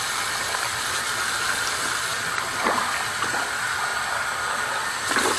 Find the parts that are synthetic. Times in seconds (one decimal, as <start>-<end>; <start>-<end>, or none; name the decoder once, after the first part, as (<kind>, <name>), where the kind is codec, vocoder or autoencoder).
none